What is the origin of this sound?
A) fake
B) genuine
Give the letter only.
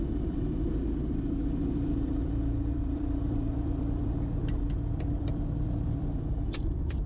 A